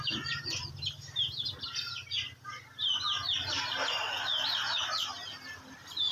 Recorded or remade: recorded